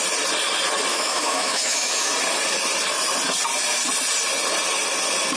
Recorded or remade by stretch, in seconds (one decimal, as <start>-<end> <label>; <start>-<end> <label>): 0.0-0.9 recorded; 0.9-2.1 remade; 2.1-5.4 recorded